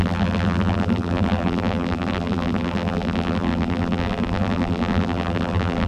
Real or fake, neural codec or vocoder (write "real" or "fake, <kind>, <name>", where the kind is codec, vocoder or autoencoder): fake, vocoder, BigVGAN v2